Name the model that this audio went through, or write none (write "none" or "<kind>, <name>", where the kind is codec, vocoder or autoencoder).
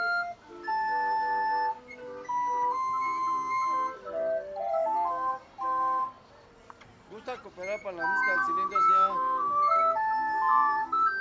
none